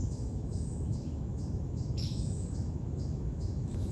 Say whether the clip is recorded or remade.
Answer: remade